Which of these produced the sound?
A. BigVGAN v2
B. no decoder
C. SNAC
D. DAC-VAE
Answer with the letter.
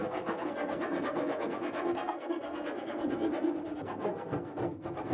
C